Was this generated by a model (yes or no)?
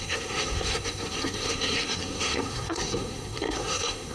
yes